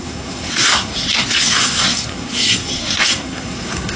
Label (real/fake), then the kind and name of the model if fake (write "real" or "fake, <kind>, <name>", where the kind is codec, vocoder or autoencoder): fake, codec, SNAC